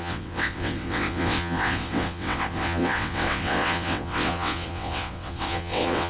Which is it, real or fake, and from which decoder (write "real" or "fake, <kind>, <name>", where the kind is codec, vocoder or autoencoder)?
fake, vocoder, WaveNeXt